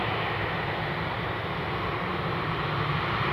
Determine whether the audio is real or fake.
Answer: real